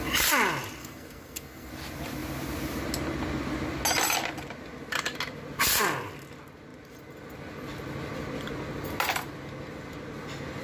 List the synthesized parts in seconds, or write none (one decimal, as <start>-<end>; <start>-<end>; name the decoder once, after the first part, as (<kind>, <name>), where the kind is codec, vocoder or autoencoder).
0.8-1.7 (codec, SNAC)